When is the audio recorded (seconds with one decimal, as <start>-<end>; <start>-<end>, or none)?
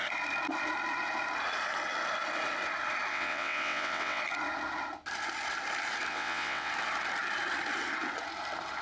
0.0-3.1; 4.2-6.1; 6.7-8.8